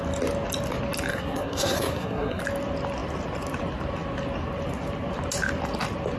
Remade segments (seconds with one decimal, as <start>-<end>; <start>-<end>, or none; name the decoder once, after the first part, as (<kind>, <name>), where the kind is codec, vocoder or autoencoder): 1.1-2.4 (codec, SNAC)